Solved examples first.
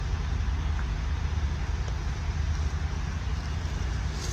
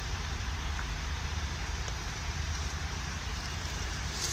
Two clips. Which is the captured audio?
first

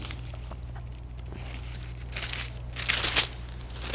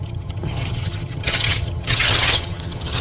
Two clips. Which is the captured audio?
first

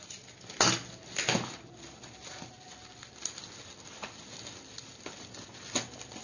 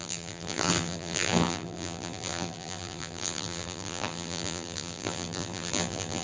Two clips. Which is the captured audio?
first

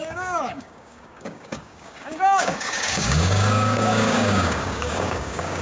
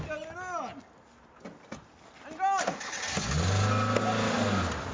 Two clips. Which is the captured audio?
second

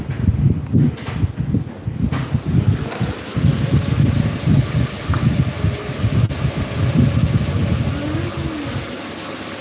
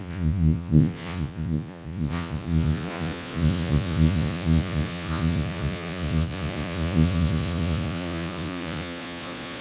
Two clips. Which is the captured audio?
first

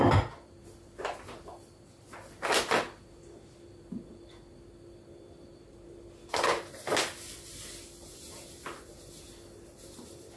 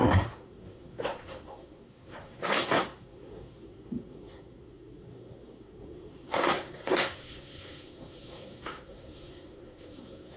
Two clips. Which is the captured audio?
first